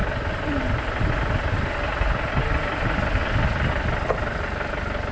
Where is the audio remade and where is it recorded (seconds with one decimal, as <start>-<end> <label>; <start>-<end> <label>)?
0.0-3.2 remade; 3.2-3.7 recorded; 3.7-5.1 remade